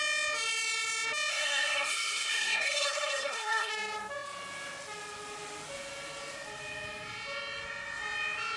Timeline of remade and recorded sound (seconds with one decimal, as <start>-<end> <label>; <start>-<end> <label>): 0.0-1.3 recorded; 1.3-3.7 remade; 3.7-8.6 recorded